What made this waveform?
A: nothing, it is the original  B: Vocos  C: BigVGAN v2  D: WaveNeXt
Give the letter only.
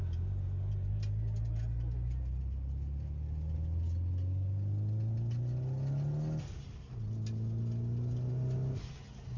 A